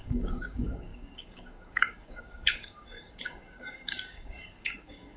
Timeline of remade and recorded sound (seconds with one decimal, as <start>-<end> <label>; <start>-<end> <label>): 0.0-5.2 remade